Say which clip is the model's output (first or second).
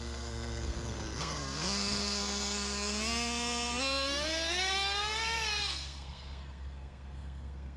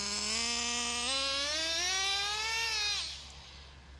first